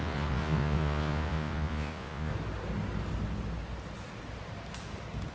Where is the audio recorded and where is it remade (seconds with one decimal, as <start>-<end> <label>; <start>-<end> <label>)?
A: 0.0-2.3 remade; 2.3-5.3 recorded